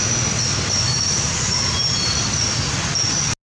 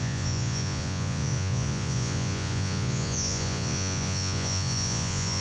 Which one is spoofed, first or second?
second